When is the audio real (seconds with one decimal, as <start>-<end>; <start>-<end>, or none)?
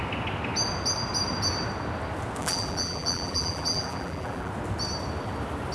0.0-2.4; 4.5-5.7